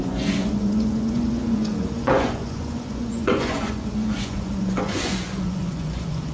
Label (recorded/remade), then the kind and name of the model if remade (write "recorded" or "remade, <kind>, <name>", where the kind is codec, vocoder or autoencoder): remade, vocoder, Vocos